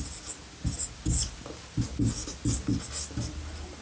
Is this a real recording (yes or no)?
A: yes